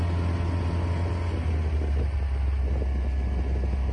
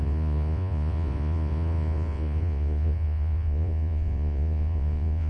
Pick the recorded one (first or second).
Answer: first